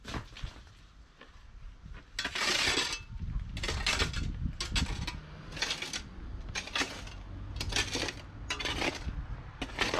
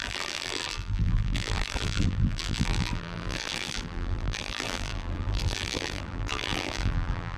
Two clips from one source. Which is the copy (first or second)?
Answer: second